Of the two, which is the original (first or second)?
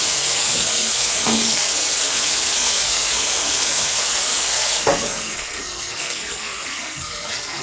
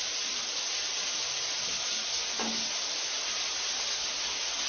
second